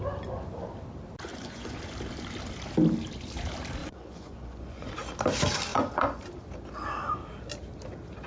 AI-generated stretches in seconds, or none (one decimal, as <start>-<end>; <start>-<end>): 1.3-1.8; 3.8-4.9; 5.7-6.2